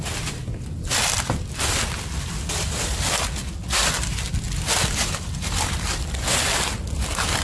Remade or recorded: recorded